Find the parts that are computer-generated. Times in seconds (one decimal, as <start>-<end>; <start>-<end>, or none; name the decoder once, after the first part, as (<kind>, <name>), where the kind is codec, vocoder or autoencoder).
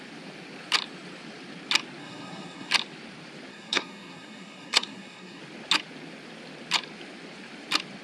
2.0-2.7 (codec, SNAC); 3.5-5.4